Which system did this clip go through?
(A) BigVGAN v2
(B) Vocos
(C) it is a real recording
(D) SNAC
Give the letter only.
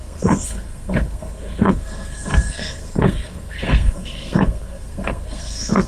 D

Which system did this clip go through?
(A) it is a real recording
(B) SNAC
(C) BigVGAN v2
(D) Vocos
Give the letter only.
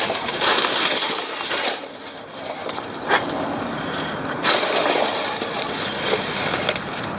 C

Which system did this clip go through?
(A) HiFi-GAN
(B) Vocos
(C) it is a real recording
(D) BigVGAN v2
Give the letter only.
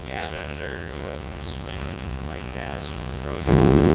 B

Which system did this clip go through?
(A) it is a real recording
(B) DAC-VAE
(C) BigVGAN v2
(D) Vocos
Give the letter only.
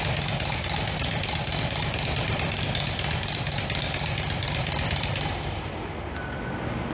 A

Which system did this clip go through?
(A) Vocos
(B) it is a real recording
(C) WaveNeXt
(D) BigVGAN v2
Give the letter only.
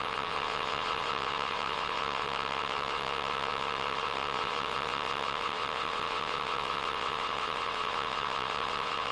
C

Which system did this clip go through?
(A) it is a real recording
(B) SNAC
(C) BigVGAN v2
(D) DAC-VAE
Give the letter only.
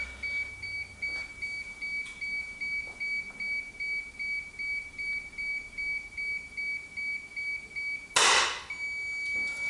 A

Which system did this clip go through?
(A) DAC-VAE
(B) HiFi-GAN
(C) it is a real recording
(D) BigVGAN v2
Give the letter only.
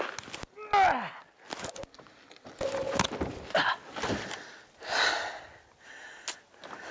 C